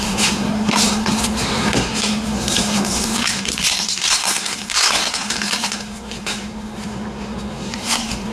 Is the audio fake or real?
fake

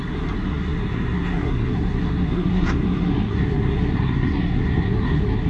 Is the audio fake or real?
fake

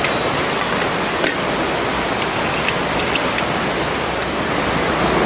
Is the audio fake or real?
real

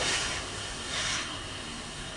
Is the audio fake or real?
fake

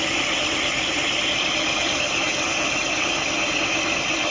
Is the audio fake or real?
real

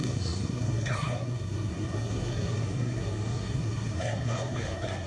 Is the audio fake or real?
fake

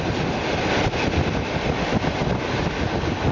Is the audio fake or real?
real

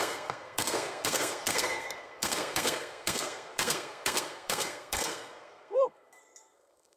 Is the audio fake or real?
fake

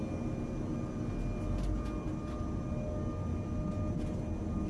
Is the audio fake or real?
real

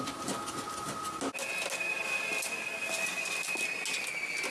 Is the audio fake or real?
real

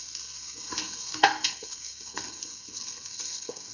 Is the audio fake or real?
fake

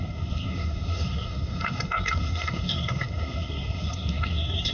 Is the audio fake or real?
fake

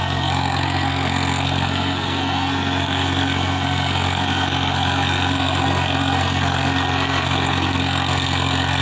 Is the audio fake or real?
fake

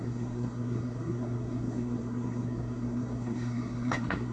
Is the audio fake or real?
fake